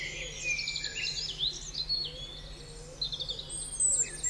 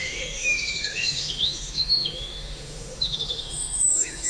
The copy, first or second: second